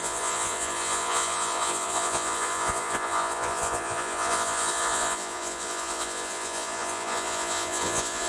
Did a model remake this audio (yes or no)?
yes